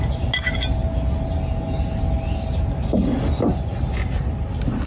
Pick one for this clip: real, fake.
real